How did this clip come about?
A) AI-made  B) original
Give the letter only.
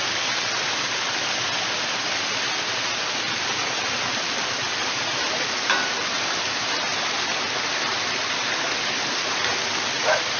B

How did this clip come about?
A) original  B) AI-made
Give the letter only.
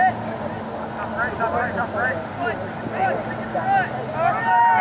A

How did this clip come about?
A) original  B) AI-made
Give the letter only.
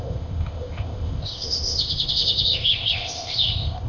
B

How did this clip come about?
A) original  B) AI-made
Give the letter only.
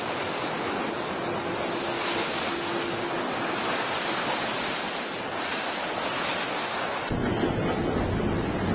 A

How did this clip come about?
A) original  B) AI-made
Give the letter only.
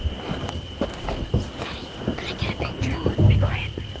A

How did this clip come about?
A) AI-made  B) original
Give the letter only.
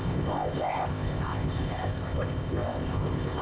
A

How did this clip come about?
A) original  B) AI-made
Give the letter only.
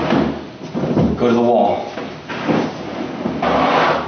A